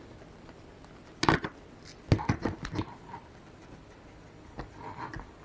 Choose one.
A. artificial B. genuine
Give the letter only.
B